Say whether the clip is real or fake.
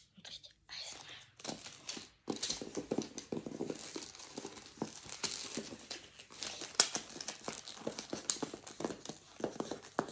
real